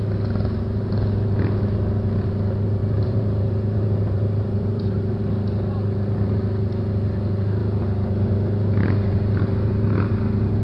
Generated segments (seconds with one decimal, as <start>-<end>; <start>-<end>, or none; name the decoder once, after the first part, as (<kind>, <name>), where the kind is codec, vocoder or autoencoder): 2.8-5.2 (vocoder, BigVGAN v2)